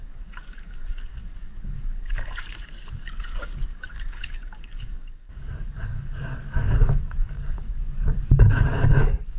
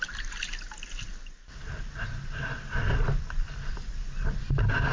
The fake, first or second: first